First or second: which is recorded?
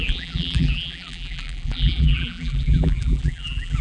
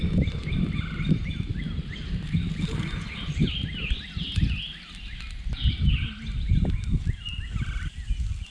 second